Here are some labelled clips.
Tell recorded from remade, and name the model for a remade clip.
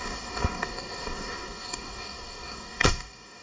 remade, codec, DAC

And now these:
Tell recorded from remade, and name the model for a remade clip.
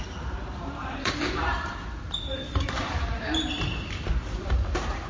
remade, vocoder, BigVGAN v2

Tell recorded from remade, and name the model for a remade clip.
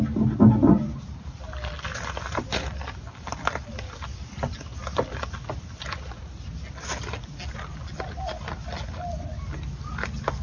recorded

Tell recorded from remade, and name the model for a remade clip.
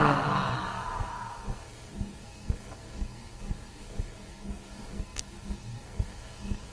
remade, codec, SNAC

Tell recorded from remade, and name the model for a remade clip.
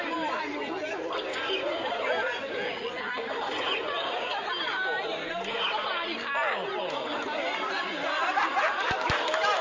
recorded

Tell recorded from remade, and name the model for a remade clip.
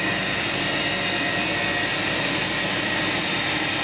remade, vocoder, BigVGAN v2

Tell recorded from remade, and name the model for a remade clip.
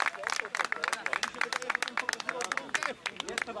recorded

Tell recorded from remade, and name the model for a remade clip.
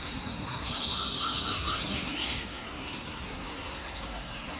remade, codec, SNAC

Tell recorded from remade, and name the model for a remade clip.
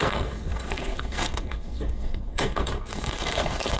remade, codec, SNAC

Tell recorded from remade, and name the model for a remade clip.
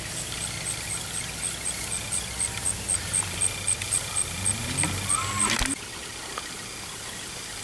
recorded